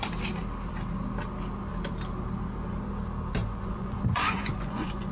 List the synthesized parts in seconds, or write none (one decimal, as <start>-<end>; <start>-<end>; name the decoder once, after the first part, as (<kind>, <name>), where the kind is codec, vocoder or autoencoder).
3.4-5.1 (vocoder, Vocos)